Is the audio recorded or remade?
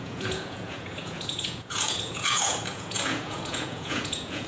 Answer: remade